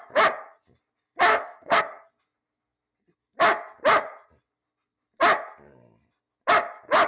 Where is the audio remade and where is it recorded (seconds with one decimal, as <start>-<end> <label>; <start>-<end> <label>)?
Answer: 0.0-1.3 recorded; 1.3-1.8 remade; 1.8-7.1 recorded